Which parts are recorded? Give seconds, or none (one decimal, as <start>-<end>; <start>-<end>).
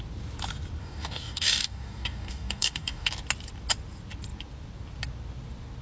0.0-0.8; 3.1-5.8